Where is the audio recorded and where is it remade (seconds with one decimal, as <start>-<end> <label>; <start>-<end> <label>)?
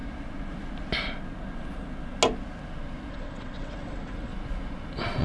0.0-3.1 recorded; 3.1-4.3 remade; 4.3-5.2 recorded